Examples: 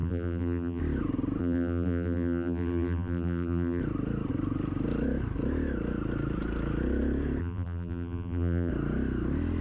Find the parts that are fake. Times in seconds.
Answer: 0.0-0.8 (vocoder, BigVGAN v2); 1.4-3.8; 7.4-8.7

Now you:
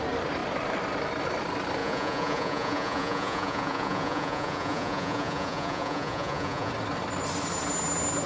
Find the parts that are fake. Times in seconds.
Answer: 1.8-6.7 (vocoder, Vocos)